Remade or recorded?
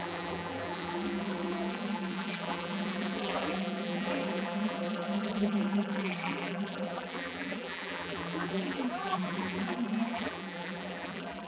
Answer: remade